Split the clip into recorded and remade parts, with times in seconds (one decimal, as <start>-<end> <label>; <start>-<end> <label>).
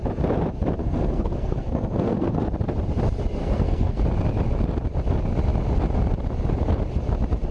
0.0-0.8 recorded; 0.8-2.4 remade; 2.4-3.4 recorded; 3.4-4.0 remade; 4.0-7.5 recorded